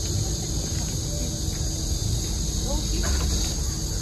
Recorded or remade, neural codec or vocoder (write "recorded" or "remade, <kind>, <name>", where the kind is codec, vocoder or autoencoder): recorded